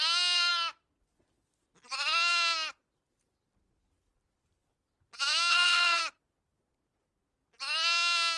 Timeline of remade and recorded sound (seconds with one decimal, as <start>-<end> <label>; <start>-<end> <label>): 0.0-5.5 recorded; 5.5-6.0 remade; 6.0-8.4 recorded